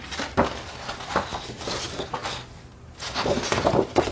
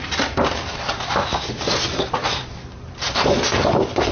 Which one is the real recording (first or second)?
first